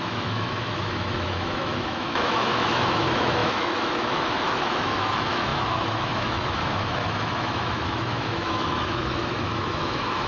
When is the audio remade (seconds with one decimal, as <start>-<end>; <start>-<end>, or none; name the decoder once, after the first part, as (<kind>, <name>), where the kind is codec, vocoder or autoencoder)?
0.0-10.3 (autoencoder, DAC-VAE)